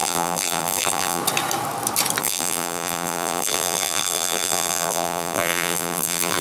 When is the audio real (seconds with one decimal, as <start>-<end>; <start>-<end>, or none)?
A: 1.2-2.2